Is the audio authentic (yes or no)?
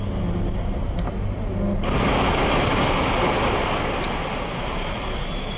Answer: yes